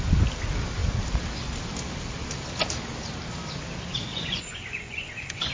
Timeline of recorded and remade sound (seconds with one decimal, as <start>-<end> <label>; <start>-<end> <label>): 0.0-4.1 recorded; 4.1-5.5 remade